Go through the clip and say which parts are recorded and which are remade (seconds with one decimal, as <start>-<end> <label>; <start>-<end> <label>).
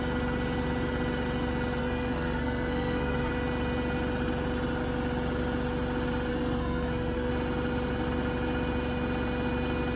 0.0-1.8 recorded; 1.8-3.3 remade; 3.3-6.3 recorded; 6.3-7.3 remade; 7.3-10.0 recorded